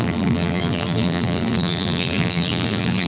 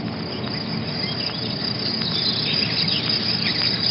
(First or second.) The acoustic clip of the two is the second